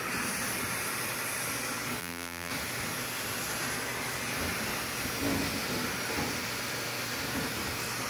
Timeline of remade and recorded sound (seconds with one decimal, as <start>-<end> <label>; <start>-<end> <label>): 0.0-2.0 recorded; 2.0-2.5 remade; 2.5-8.1 recorded